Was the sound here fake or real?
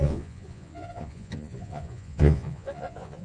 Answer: fake